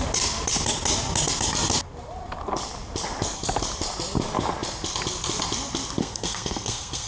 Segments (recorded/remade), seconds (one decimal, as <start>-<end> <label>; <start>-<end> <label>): 0.0-6.0 recorded; 6.0-7.1 remade